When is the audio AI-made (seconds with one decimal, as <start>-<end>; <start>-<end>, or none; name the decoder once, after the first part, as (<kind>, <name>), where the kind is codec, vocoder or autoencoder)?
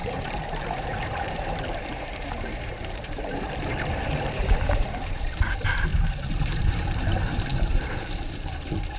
0.0-9.0 (vocoder, BigVGAN v2)